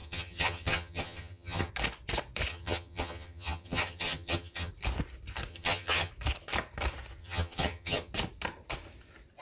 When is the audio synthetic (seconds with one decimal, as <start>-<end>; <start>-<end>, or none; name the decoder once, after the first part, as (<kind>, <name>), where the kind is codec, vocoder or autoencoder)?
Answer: 0.0-1.7 (vocoder, HiFi-GAN); 2.5-4.7; 5.5-6.1; 7.2-8.1